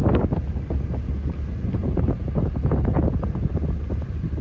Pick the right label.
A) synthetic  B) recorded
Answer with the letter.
B